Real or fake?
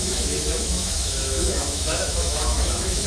fake